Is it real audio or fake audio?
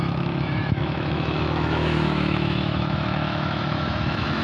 fake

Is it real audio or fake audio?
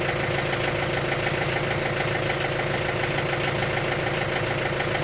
real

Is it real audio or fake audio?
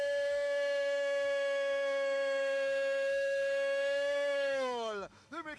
fake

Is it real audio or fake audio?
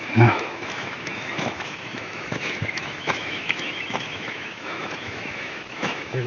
fake